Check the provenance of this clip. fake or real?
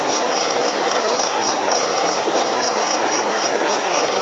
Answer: fake